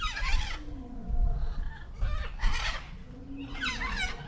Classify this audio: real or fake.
real